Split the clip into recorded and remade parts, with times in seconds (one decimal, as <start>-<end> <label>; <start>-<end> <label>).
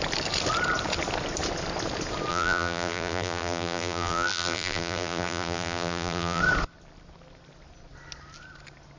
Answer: 0.0-2.3 recorded; 2.3-6.4 remade; 6.4-9.0 recorded